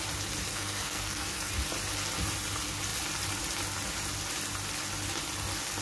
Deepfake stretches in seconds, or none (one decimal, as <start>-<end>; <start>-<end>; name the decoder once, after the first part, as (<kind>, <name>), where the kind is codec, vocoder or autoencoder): 0.5-1.5 (codec, SNAC)